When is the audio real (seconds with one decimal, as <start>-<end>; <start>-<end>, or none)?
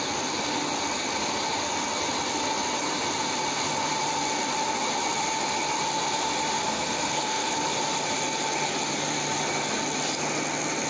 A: 0.0-6.6; 7.5-10.9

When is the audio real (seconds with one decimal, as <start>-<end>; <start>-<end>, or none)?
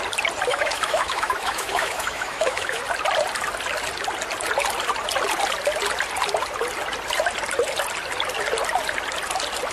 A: 0.0-0.5; 2.8-9.7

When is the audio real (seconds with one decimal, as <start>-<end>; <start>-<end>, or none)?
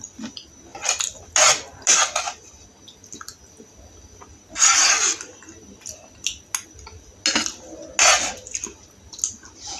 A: 0.0-9.8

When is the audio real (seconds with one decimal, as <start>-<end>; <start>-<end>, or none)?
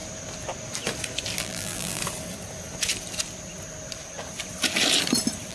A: 0.0-1.4; 2.0-5.5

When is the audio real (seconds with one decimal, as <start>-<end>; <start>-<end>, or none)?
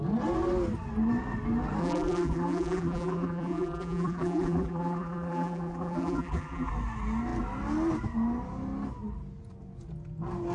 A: 0.0-1.8; 6.7-10.5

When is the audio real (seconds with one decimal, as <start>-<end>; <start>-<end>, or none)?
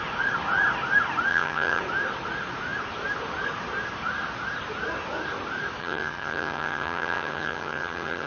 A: 0.0-1.3; 1.8-5.8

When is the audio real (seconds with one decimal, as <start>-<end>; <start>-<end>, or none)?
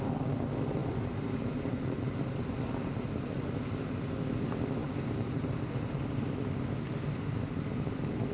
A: 0.0-0.8; 2.5-4.8; 6.0-8.3